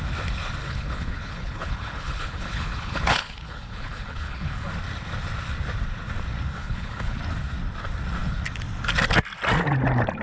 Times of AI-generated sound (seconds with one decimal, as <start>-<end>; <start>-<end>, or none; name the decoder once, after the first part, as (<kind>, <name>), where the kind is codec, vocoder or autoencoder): 0.6-4.7 (codec, HILCodec); 6.6-7.2